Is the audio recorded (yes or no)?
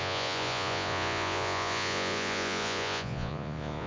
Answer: no